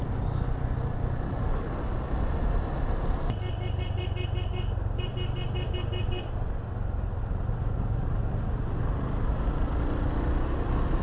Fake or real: real